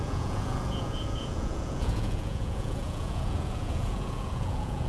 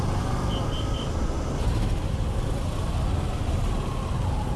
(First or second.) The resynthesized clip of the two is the first